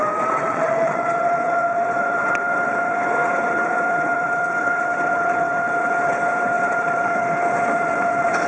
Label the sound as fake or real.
fake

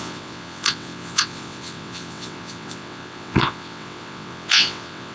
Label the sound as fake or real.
fake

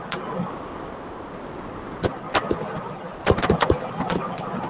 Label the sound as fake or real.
real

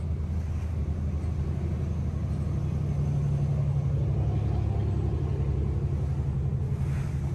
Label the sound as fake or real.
real